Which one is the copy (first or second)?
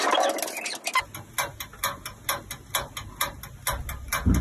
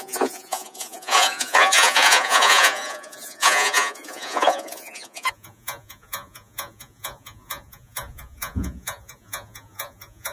second